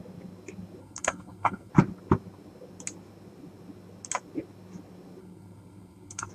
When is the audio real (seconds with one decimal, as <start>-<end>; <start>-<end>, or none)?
0.0-0.8; 1.7-5.2